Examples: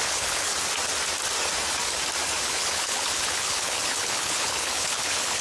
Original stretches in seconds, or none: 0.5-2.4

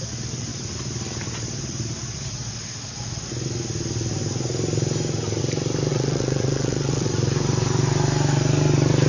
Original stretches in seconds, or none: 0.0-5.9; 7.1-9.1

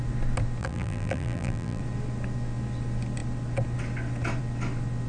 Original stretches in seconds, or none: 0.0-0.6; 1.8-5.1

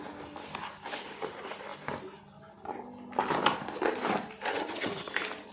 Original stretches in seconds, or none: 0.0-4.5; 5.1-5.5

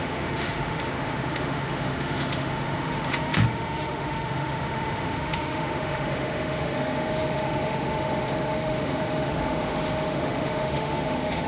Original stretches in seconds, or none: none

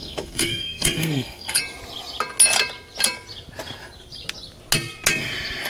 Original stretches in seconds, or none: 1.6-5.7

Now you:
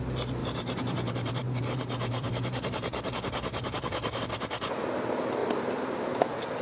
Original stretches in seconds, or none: 0.0-0.4; 4.2-5.4